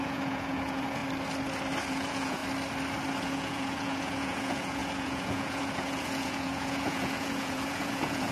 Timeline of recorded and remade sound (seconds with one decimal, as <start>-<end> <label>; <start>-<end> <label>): 0.0-1.0 remade; 1.0-1.9 recorded; 1.9-2.4 remade; 2.4-3.2 recorded; 3.2-8.3 remade